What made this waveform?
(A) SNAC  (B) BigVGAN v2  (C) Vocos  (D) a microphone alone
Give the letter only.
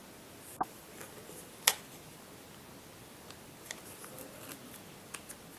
D